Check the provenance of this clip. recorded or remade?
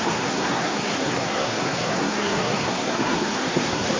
remade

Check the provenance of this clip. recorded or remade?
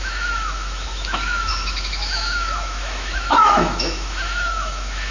remade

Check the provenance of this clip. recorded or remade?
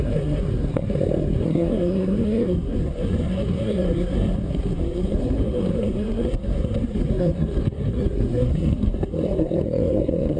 remade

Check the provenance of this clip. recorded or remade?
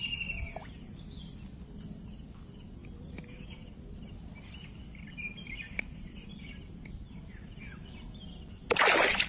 recorded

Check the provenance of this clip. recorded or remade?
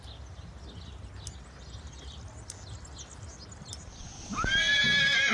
recorded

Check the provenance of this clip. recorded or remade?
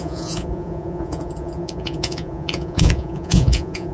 remade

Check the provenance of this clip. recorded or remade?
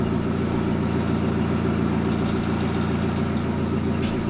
recorded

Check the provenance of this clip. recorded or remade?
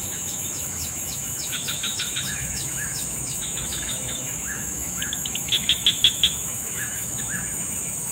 remade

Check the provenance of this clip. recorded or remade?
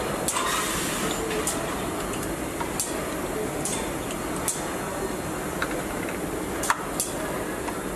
recorded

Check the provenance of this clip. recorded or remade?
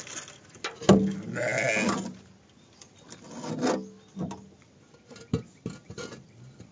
recorded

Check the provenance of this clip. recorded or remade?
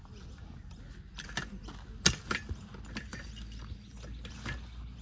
recorded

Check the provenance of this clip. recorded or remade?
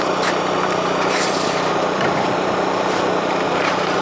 remade